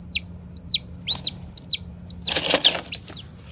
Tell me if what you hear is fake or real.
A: real